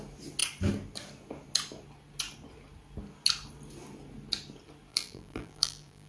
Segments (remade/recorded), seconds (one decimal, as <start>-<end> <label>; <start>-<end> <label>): 0.0-4.9 recorded; 4.9-6.1 remade